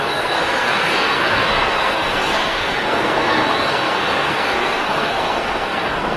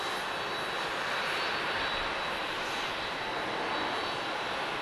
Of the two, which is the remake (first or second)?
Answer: first